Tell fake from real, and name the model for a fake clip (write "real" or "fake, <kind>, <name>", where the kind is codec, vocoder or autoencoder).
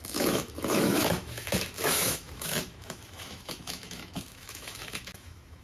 fake, autoencoder, DAC-VAE